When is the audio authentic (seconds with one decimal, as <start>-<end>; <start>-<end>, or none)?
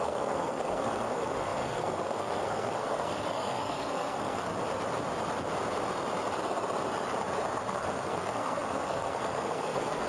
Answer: 4.5-7.7